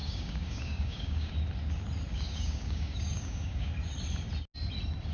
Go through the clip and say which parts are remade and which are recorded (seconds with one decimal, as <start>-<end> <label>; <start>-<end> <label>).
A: 0.0-1.3 remade; 1.3-2.1 recorded; 2.1-3.7 remade; 3.7-5.1 recorded